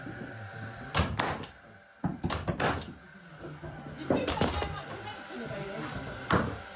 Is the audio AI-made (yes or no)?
no